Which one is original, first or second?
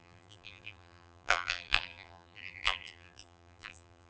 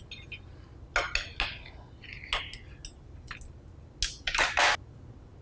second